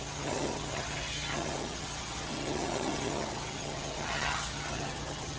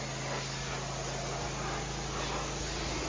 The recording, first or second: second